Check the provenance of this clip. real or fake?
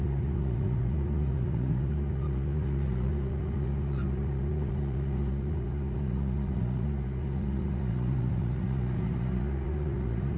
fake